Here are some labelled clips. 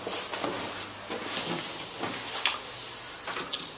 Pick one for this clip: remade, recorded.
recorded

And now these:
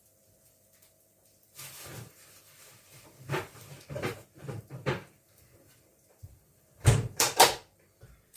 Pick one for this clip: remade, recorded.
remade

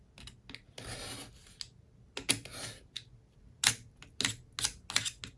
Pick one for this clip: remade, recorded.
recorded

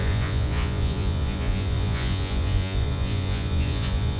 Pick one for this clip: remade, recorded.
remade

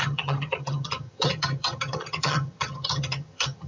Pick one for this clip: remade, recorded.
remade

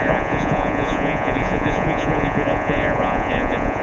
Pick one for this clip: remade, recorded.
remade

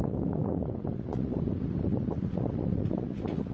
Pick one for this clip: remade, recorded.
remade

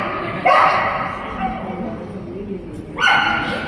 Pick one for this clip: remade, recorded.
recorded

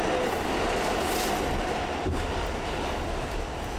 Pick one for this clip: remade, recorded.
recorded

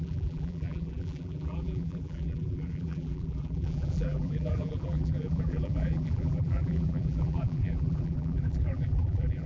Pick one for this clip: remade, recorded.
remade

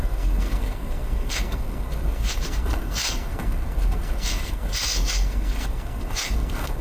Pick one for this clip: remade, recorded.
remade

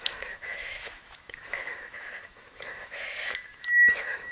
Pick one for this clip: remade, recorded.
remade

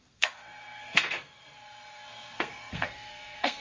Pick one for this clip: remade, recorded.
remade